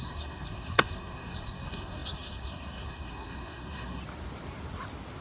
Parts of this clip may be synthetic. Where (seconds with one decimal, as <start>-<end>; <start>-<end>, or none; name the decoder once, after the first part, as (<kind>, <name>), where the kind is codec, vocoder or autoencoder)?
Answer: 0.0-4.0 (codec, SNAC)